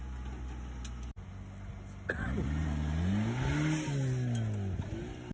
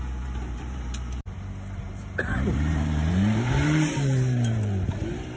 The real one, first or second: first